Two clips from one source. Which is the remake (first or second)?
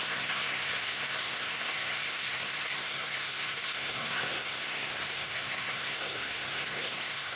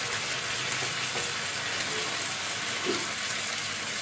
first